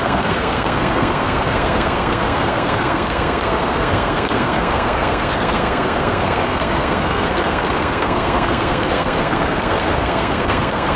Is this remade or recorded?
remade